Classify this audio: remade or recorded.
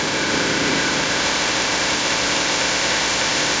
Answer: remade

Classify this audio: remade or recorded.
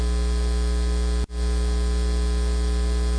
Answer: recorded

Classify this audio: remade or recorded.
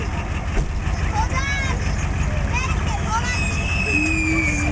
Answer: recorded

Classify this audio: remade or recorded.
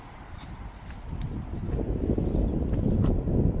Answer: recorded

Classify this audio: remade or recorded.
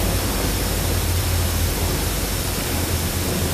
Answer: recorded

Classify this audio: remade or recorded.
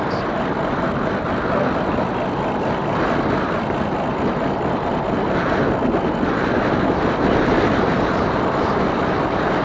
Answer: recorded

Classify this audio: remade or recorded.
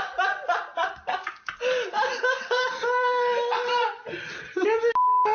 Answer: recorded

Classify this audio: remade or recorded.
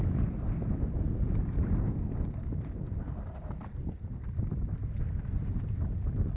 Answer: recorded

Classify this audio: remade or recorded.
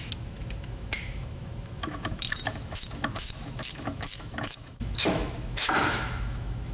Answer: remade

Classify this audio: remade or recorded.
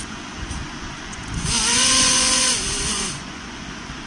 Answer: remade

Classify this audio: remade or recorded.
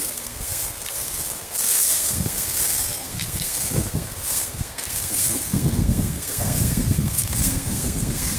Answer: remade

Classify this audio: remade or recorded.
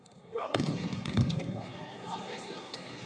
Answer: remade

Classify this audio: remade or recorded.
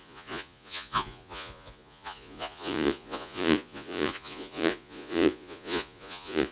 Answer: remade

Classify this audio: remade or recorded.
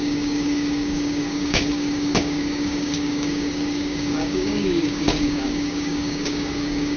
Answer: remade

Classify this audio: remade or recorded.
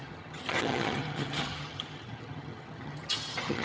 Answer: remade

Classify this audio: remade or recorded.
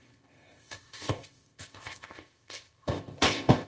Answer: remade